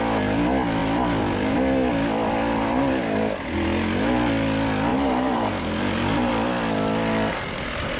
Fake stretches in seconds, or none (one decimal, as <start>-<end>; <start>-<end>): 4.9-6.3